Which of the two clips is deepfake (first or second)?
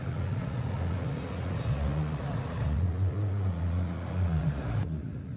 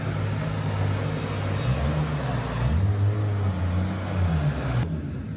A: first